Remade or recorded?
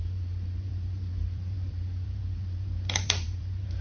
remade